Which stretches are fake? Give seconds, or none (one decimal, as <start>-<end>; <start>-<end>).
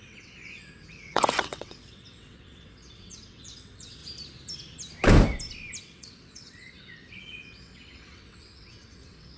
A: 0.0-4.0; 5.8-9.4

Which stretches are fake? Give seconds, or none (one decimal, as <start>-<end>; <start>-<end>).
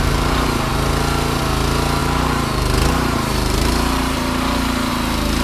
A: 2.0-4.9